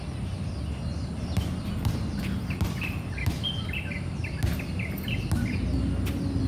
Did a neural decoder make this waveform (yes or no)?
no